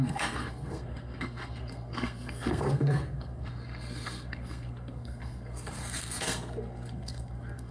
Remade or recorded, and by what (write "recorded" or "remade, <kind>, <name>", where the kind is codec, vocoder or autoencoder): remade, codec, SNAC